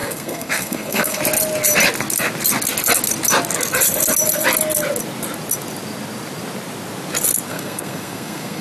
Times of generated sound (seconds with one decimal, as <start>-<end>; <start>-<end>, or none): 0.0-1.2; 7.5-8.6